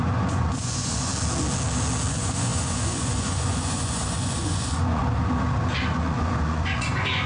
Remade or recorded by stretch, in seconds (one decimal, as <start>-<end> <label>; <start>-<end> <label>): 0.0-1.1 remade; 1.1-2.1 recorded; 2.1-5.0 remade; 5.0-5.9 recorded; 5.9-7.3 remade